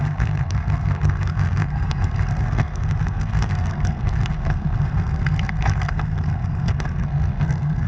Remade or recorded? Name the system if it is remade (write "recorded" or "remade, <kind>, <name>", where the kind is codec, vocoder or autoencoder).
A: remade, codec, SNAC